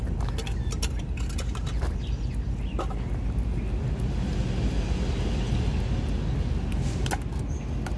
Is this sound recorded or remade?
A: recorded